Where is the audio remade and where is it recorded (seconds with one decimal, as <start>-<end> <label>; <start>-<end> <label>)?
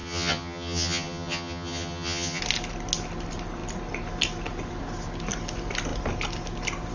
0.0-2.4 remade; 2.4-6.9 recorded